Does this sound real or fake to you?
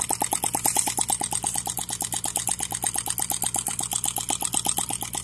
real